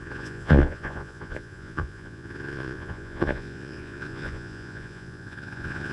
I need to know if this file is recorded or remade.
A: remade